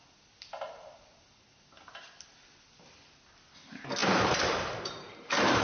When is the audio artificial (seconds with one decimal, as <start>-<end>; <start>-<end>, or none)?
4.0-5.6